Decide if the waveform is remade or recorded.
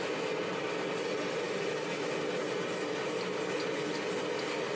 recorded